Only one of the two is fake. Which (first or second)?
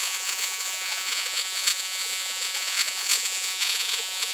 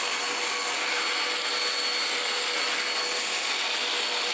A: first